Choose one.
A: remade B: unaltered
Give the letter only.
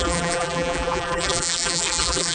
A